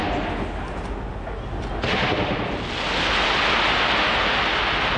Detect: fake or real real